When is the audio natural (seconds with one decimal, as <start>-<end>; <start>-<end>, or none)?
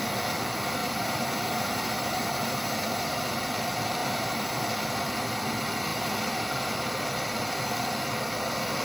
0.0-0.8; 3.2-4.0; 4.7-5.9; 6.9-8.8